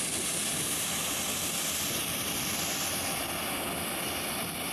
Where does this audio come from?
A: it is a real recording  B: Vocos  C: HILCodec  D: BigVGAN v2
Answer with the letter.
D